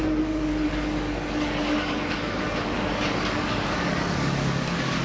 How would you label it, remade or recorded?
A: remade